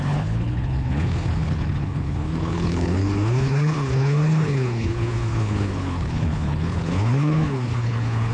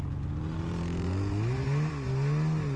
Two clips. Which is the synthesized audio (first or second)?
first